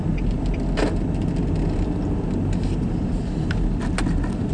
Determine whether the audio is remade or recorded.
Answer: recorded